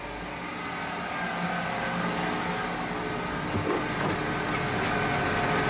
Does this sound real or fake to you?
real